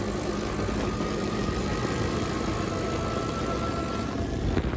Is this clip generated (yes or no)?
no